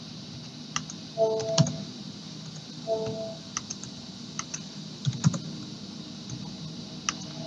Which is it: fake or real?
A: real